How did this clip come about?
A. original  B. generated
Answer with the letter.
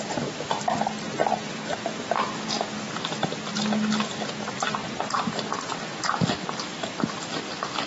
A